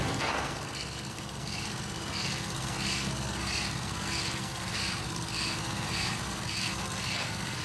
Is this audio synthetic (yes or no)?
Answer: yes